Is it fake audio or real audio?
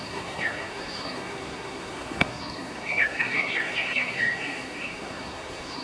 fake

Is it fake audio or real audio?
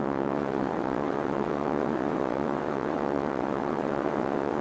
fake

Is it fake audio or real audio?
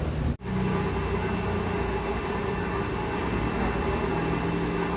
real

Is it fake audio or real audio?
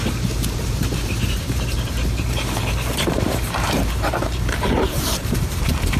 fake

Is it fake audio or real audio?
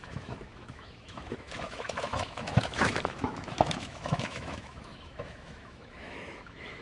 fake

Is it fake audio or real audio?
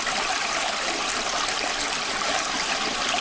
real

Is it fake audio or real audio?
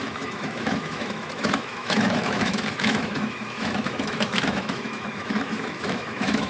fake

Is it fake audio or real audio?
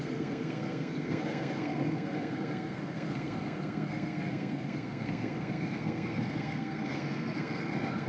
fake